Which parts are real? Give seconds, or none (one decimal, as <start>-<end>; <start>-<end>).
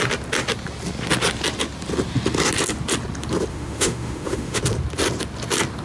0.0-3.5; 4.6-5.8